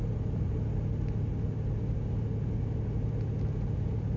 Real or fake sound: real